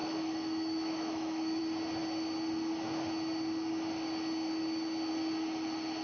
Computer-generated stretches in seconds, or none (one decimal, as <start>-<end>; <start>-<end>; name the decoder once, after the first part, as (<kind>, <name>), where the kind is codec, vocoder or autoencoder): 0.0-1.6 (autoencoder, DAC-VAE)